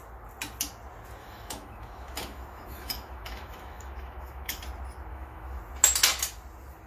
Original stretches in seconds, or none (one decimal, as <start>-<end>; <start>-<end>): 0.0-1.2; 4.6-5.1; 5.6-6.9